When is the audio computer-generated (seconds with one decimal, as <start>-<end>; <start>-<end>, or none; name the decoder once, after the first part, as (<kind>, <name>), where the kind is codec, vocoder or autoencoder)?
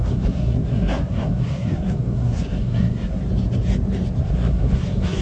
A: 0.0-3.2 (codec, SNAC); 4.2-5.2